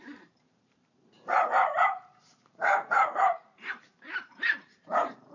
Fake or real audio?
fake